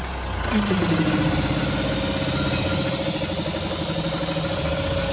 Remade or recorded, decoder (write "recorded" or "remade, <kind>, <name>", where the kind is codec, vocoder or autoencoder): recorded